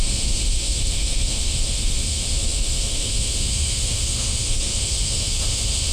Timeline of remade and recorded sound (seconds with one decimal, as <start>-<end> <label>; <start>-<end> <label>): 0.0-5.9 remade